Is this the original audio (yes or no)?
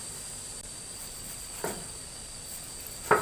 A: yes